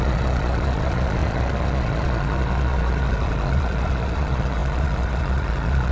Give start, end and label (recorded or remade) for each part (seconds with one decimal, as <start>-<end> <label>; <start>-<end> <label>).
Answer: 0.0-5.9 remade